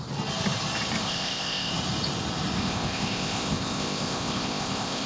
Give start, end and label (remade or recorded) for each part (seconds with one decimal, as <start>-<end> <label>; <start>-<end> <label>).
0.0-1.0 recorded; 1.0-1.7 remade; 1.7-2.6 recorded; 2.6-5.1 remade